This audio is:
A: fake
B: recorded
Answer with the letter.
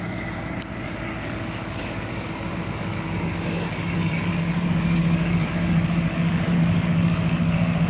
A